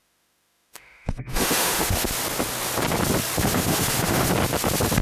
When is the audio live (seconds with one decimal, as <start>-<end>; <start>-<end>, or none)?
2.1-3.5; 4.3-5.0